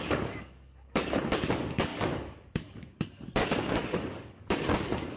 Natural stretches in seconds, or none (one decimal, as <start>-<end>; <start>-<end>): none